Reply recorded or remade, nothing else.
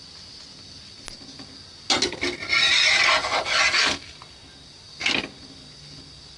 recorded